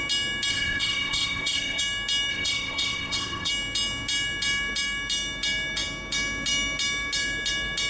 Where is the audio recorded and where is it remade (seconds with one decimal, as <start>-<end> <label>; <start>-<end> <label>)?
0.0-0.5 recorded; 0.5-1.8 remade; 1.8-2.3 recorded; 2.3-3.5 remade; 3.5-7.9 recorded